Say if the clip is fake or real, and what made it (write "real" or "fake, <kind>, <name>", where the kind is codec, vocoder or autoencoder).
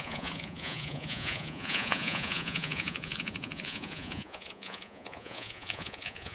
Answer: fake, vocoder, Vocos